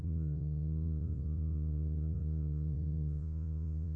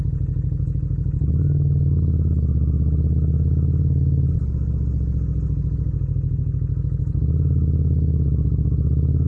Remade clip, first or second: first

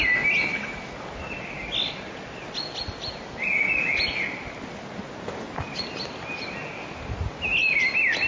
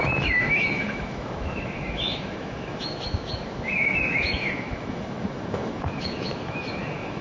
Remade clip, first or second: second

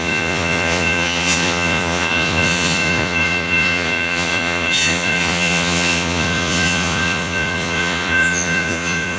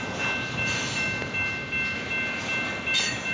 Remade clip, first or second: first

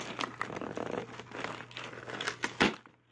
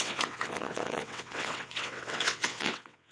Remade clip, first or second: second